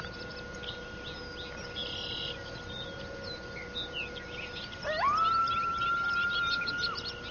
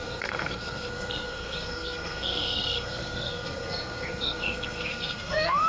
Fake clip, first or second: second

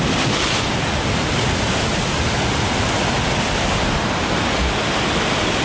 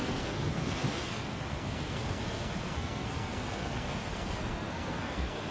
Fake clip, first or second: second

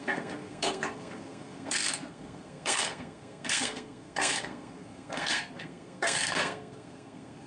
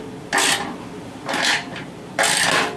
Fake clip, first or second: first